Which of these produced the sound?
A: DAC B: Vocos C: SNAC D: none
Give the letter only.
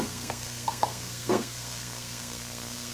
C